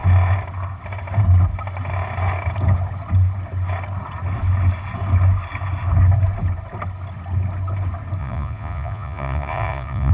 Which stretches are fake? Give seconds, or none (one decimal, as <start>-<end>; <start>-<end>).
8.2-10.1